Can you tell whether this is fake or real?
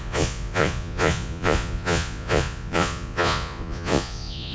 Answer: fake